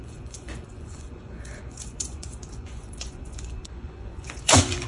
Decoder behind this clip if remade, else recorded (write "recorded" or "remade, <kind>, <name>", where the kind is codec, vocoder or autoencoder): remade, vocoder, Vocos